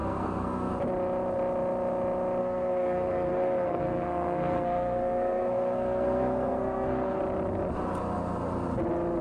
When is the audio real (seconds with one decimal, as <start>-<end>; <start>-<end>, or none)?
0.7-2.4; 7.2-9.2